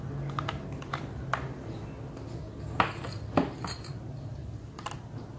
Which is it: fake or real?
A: real